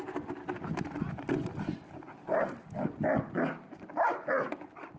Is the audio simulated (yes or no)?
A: no